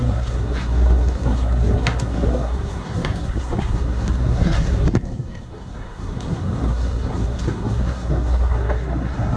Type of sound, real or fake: fake